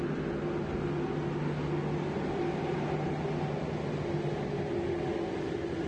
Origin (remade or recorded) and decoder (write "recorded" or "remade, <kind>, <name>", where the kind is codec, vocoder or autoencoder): recorded